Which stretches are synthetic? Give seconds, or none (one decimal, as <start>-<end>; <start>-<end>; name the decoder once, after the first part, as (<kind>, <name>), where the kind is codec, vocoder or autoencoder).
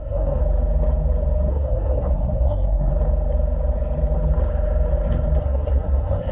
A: 0.0-0.4 (codec, SNAC); 1.5-2.9; 5.4-6.3